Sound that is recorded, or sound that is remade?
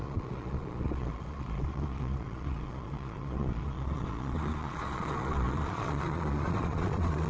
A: remade